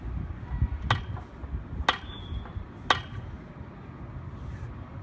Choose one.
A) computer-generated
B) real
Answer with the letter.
B